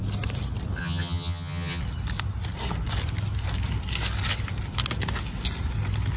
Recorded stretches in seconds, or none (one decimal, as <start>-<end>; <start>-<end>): 0.0-0.8; 1.8-6.2